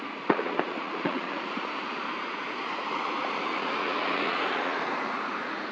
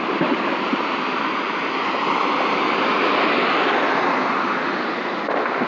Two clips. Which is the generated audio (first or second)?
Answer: first